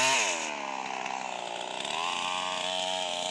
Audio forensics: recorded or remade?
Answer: recorded